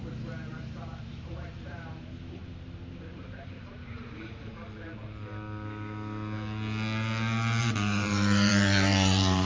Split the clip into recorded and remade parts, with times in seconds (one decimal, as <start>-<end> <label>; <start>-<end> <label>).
0.0-2.4 remade; 2.4-3.3 recorded; 3.3-4.5 remade; 4.5-7.6 recorded; 7.6-9.4 remade